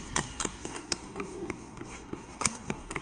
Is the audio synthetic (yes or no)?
yes